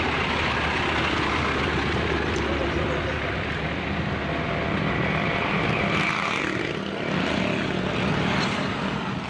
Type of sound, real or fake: real